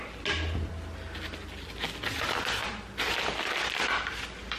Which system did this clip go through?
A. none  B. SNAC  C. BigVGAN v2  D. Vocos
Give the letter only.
A